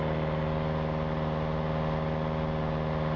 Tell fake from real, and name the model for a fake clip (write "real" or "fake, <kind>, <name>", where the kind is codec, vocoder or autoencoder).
real